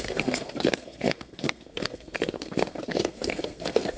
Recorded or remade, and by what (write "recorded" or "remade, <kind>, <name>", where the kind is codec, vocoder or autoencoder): remade, codec, SNAC